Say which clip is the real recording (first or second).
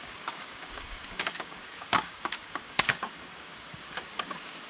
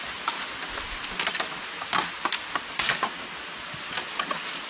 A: second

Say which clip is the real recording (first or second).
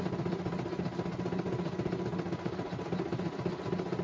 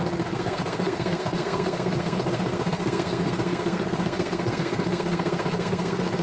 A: first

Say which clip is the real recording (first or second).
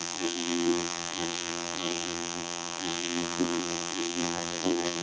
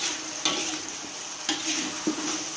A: second